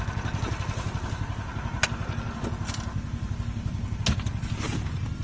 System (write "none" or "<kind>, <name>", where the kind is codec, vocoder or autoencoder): none